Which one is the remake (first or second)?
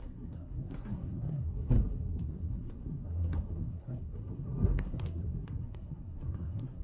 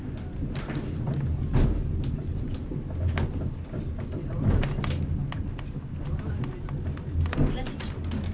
first